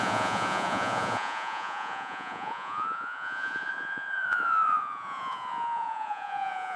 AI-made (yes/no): yes